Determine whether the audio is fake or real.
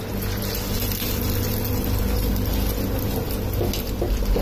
real